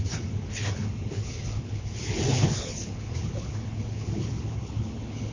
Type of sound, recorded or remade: remade